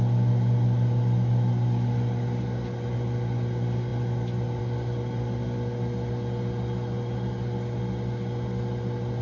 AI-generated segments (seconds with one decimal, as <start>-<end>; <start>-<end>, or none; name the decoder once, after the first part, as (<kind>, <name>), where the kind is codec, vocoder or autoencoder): none